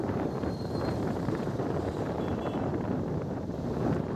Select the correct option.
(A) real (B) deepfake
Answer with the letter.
B